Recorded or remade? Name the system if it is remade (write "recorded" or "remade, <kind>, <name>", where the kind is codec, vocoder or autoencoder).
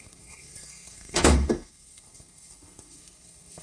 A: remade, codec, SNAC